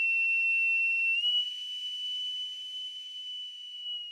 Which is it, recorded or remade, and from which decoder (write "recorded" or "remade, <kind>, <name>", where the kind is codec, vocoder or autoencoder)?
recorded